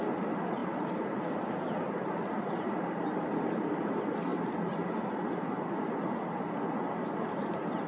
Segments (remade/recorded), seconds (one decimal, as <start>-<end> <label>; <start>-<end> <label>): 0.0-7.9 recorded